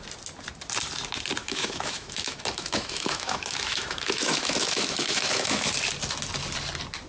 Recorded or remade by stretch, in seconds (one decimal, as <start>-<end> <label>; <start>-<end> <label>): 0.0-1.4 recorded; 1.4-5.7 remade; 5.7-7.1 recorded